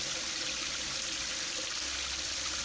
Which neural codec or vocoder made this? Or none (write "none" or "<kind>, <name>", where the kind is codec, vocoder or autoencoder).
none